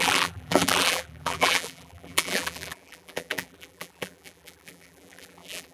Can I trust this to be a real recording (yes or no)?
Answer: no